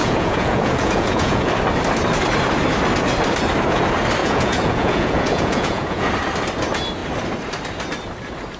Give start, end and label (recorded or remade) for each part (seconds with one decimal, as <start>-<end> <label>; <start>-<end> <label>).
0.0-1.5 remade; 1.5-4.2 recorded; 4.2-6.1 remade; 6.1-8.6 recorded